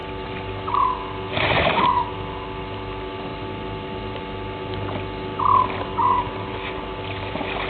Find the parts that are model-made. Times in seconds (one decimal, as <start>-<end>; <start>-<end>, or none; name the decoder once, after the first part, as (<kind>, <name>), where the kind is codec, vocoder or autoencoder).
none